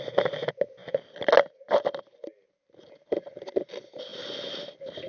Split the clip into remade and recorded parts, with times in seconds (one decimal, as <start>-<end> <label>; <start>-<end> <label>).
0.0-5.1 recorded